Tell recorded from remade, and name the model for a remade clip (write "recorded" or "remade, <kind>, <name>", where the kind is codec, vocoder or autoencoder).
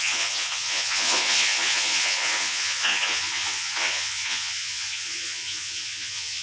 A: remade, vocoder, Vocos